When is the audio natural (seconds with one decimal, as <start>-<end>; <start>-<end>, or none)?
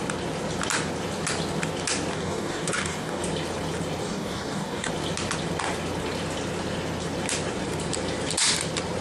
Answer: 0.0-2.1; 3.2-4.0; 4.9-9.0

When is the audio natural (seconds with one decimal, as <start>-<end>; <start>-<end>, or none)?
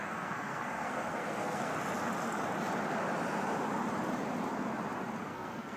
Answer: 1.7-5.2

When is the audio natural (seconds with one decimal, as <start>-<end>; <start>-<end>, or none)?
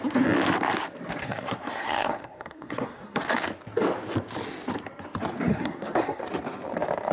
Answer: 0.0-1.2; 3.2-5.5; 6.2-7.1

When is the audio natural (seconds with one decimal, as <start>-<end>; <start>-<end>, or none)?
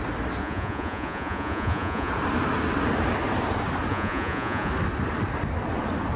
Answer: 0.0-0.4; 2.1-3.9; 4.7-6.2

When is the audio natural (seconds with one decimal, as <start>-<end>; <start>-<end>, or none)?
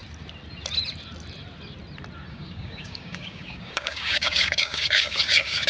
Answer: 0.0-2.3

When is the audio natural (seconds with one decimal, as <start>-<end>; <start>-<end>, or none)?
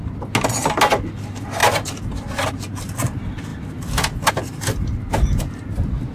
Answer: 0.0-6.1